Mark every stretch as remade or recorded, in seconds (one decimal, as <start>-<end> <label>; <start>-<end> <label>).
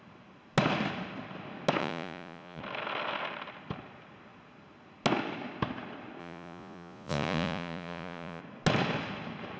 0.0-1.8 recorded; 1.8-2.6 remade; 2.6-6.2 recorded; 6.2-8.4 remade; 8.4-9.6 recorded